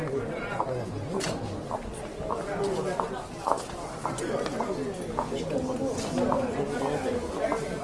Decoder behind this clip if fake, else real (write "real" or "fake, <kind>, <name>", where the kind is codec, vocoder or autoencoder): real